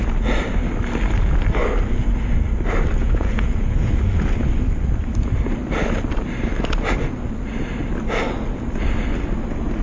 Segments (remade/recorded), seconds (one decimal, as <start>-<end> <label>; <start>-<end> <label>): 0.0-3.0 recorded; 3.0-3.9 remade; 3.9-9.8 recorded